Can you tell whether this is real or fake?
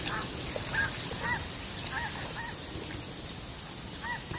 real